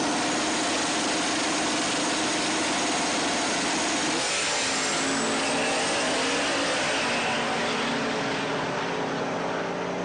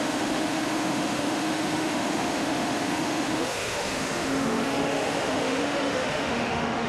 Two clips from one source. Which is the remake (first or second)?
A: second